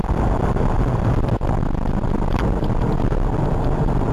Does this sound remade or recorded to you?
recorded